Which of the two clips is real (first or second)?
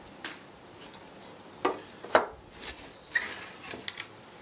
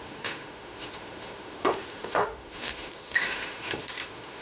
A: first